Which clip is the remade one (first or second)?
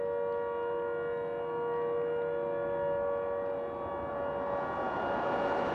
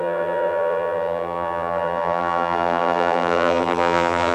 second